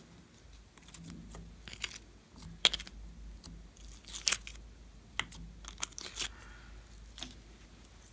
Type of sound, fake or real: real